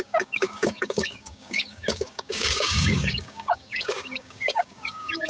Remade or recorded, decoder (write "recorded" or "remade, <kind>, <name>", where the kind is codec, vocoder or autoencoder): remade, codec, DAC